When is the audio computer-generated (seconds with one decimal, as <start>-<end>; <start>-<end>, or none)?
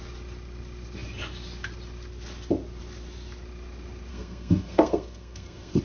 4.1-5.8